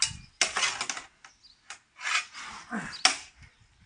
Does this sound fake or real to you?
real